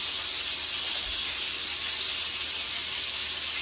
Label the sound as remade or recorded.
recorded